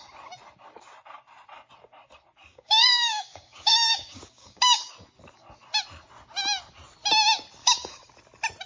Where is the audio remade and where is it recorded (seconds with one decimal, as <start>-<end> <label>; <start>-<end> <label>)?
0.0-2.5 recorded; 2.5-4.9 remade; 4.9-7.6 recorded; 7.6-8.1 remade; 8.1-8.7 recorded